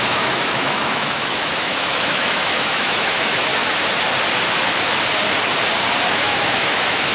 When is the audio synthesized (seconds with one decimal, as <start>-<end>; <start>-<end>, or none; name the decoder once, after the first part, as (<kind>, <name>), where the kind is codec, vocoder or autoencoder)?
0.0-3.5 (autoencoder, DAC-VAE); 6.1-7.1